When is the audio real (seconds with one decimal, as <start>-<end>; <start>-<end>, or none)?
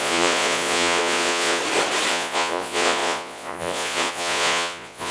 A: 1.6-2.1